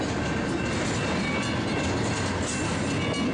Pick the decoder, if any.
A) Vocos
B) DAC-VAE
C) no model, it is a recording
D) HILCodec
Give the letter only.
C